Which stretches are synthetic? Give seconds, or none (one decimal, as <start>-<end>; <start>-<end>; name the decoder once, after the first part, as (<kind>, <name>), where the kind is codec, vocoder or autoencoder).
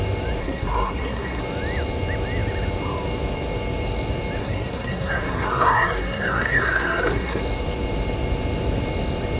0.4-1.4 (codec, SNAC); 4.4-7.4